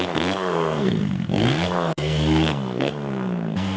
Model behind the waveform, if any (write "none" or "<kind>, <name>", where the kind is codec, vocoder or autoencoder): codec, SNAC